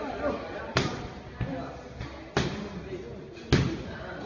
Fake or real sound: real